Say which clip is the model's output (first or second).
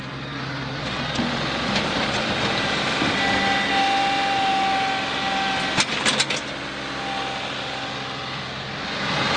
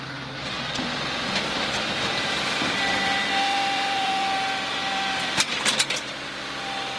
second